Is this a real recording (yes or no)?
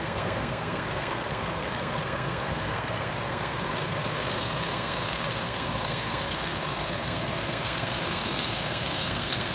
no